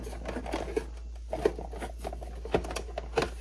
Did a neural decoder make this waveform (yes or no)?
no